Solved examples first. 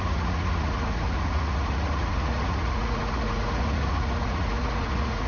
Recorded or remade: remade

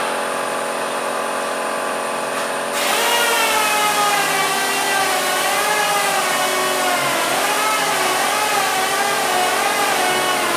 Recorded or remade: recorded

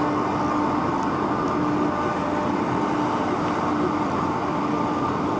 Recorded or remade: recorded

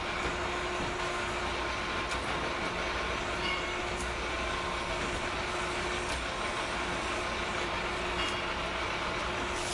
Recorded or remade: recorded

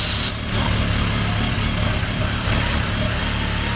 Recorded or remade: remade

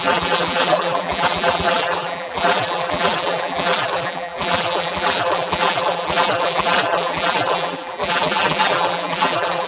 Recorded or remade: remade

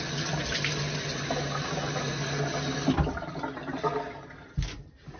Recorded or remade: recorded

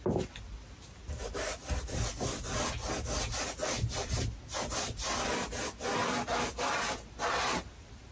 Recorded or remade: recorded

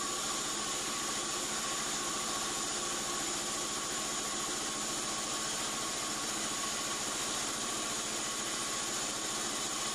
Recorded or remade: recorded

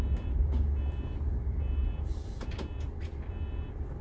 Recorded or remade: recorded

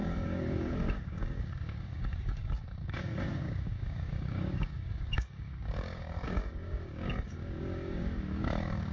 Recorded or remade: remade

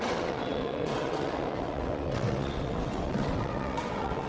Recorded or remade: remade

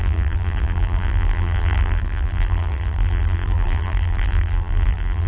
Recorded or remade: remade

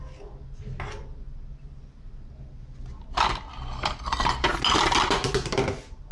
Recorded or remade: recorded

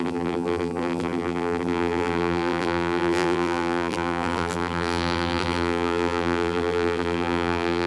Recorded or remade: remade